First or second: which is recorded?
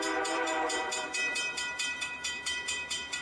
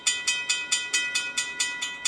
second